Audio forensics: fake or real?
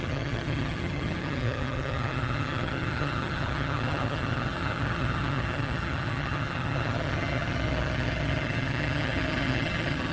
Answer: fake